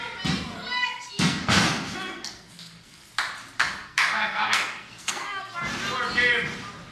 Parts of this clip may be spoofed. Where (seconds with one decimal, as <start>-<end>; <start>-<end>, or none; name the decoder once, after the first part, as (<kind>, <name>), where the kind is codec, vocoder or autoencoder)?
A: 0.5-3.1 (codec, SNAC); 3.6-5.6